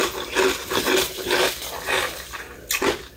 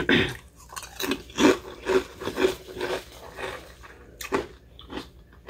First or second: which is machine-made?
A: first